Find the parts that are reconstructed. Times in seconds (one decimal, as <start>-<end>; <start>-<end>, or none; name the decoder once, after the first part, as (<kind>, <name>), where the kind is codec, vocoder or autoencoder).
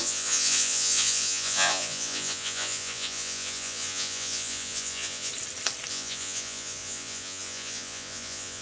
0.0-5.3 (vocoder, Vocos); 5.9-8.6